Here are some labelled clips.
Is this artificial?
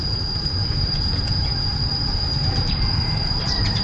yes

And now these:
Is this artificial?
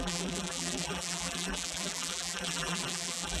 yes